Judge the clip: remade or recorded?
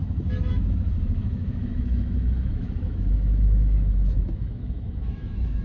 remade